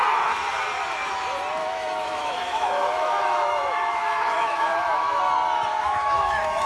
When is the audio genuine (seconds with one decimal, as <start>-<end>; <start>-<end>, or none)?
0.0-1.6; 5.2-5.7